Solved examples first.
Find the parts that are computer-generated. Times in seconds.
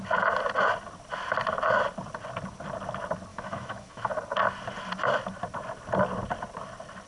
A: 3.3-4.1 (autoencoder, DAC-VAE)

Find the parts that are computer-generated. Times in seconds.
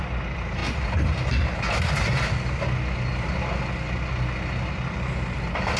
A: none